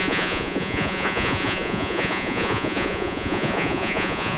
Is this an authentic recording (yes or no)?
no